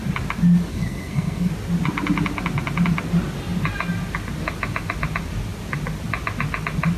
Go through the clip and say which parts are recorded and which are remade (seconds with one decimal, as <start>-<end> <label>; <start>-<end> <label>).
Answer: 0.0-0.7 recorded; 0.7-1.5 remade; 1.5-7.0 recorded